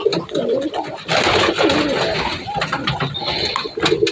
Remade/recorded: recorded